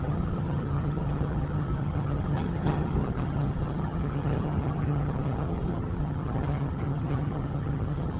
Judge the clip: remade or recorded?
remade